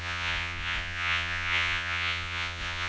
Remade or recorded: remade